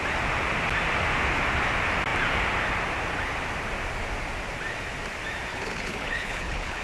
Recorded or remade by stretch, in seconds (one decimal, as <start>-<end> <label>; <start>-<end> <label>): 0.0-5.5 recorded; 5.5-6.8 remade